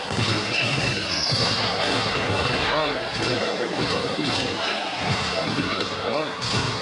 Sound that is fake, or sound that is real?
fake